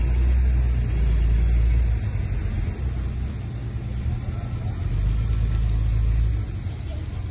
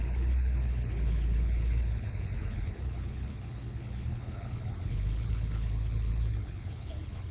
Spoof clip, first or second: second